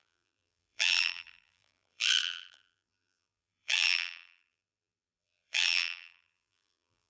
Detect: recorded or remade remade